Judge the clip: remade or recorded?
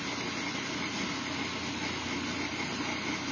recorded